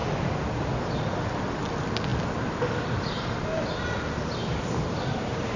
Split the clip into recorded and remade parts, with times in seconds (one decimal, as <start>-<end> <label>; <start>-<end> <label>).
0.0-5.6 recorded